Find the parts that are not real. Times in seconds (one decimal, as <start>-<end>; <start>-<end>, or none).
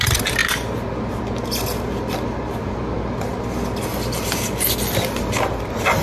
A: none